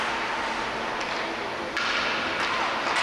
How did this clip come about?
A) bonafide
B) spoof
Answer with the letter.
A